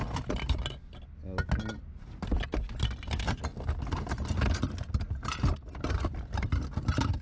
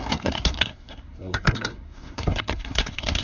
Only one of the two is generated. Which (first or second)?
second